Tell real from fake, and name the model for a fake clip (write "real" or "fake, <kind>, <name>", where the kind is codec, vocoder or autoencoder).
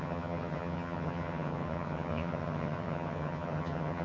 fake, vocoder, HiFi-GAN